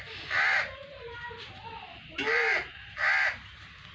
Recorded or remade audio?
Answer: recorded